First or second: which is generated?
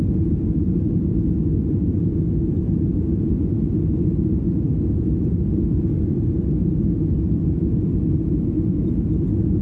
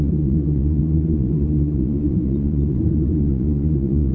second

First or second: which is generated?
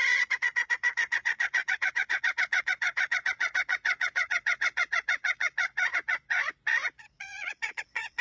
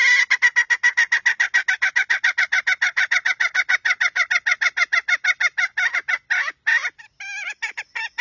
first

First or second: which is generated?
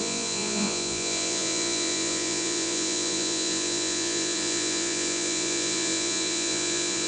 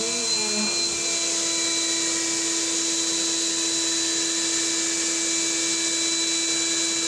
first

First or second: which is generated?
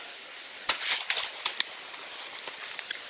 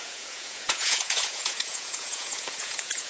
second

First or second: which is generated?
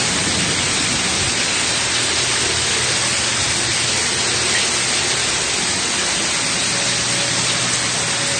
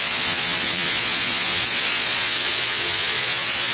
second